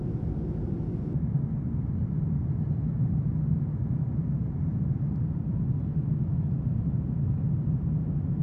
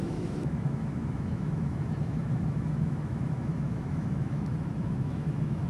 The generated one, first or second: second